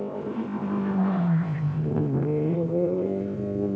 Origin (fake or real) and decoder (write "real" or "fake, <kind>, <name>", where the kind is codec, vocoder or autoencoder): fake, codec, ZipCodec